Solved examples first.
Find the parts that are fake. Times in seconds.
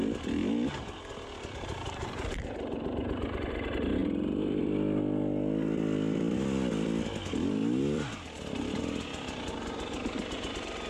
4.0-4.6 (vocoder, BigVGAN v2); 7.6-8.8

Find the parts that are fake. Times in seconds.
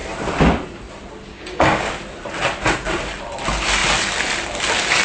1.3-1.9 (codec, DAC)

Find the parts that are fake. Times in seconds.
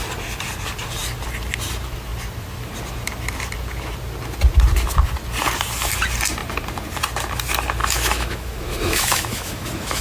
7.8-10.0 (autoencoder, DAC-VAE)